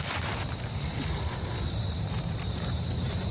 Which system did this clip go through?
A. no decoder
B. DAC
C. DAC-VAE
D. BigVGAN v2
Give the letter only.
D